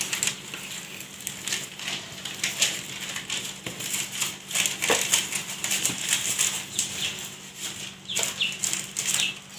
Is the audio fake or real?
real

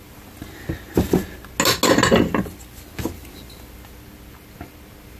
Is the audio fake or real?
real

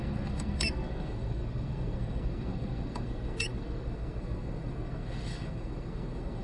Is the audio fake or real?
fake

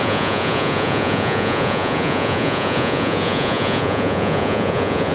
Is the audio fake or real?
fake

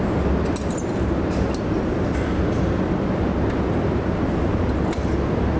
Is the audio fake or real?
real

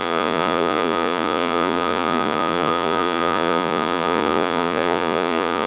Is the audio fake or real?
fake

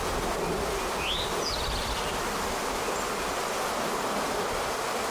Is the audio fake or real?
real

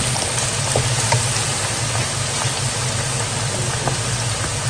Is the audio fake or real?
real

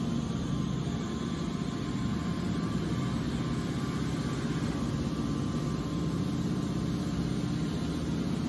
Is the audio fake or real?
real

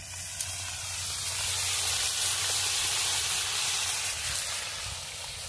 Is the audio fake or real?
real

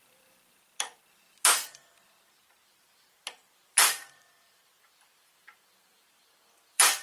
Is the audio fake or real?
fake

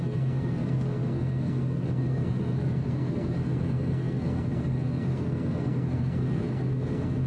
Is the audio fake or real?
fake